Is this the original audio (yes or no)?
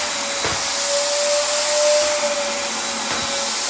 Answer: yes